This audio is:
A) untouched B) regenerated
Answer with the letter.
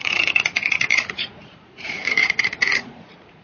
B